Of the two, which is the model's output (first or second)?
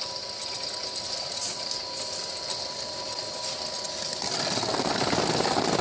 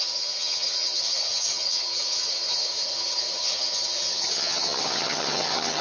second